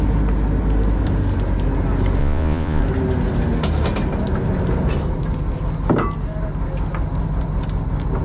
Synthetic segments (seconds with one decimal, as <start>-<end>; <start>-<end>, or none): 2.2-2.8